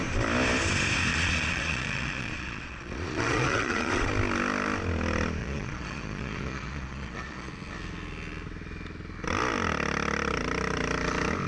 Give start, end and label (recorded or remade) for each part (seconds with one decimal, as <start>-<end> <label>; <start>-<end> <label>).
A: 0.0-1.1 recorded; 1.1-4.1 remade; 4.1-5.4 recorded; 5.4-7.5 remade; 7.5-11.5 recorded